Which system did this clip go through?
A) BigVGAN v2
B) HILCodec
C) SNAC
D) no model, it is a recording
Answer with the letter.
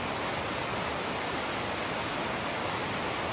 D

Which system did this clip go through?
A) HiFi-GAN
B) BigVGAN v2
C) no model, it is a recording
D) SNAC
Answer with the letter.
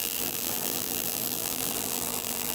B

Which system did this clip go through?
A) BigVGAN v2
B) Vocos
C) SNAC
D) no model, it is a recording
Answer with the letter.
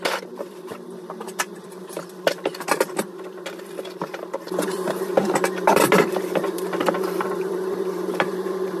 A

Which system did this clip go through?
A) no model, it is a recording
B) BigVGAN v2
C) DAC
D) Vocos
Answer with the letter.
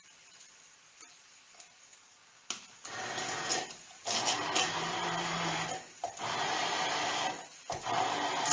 A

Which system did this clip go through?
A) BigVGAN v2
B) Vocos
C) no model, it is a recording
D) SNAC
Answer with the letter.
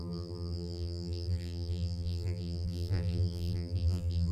A